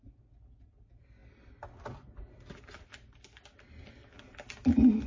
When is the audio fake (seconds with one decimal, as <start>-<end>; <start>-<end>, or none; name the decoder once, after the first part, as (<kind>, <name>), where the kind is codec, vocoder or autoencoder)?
none

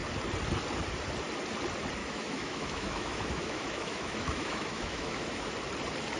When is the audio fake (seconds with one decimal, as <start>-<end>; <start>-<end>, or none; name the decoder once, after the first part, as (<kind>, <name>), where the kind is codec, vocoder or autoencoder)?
2.0-5.5 (autoencoder, DAC-VAE)

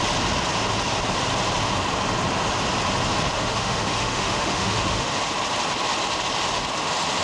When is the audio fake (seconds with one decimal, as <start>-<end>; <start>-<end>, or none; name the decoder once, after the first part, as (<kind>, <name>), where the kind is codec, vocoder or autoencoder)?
3.4-5.1 (autoencoder, DAC-VAE)

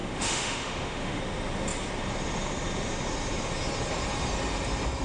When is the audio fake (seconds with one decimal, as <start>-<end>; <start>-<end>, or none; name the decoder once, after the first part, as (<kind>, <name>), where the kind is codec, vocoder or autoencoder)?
0.0-1.2 (autoencoder, DAC-VAE)

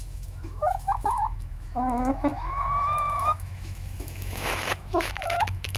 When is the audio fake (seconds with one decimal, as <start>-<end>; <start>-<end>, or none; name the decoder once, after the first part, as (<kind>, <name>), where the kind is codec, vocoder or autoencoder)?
0.0-5.8 (autoencoder, DAC-VAE)

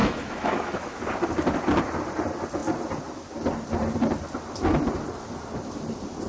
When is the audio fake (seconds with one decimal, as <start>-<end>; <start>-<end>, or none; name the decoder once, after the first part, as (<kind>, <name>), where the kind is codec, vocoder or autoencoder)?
0.0-1.0 (autoencoder, DAC-VAE)

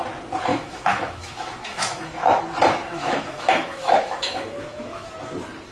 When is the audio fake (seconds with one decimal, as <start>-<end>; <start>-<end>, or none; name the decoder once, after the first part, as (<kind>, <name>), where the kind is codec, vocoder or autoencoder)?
0.5-2.4 (autoencoder, DAC-VAE); 2.8-5.1

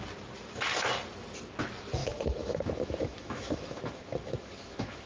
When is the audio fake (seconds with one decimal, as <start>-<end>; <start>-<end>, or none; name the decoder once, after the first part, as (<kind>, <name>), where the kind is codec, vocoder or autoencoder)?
2.0-5.1 (autoencoder, DAC-VAE)